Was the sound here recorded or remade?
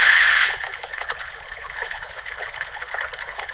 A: remade